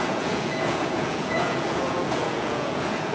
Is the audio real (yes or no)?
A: no